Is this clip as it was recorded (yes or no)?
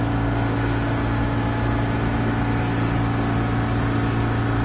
yes